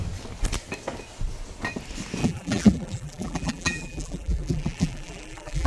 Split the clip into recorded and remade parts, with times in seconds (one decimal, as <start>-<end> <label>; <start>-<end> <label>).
0.0-2.2 recorded; 2.2-5.7 remade